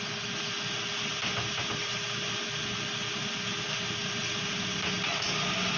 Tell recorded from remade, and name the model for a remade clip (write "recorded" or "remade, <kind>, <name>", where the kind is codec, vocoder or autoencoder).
recorded